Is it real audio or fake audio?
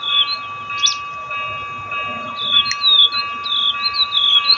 real